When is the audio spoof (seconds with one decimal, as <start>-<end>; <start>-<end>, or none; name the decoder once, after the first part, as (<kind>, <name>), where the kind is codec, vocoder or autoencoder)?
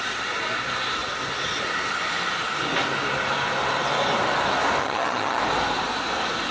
4.8-5.4 (vocoder, HiFi-GAN)